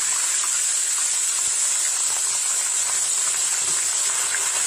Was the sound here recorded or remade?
recorded